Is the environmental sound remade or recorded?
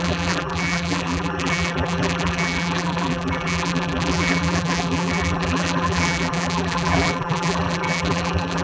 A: remade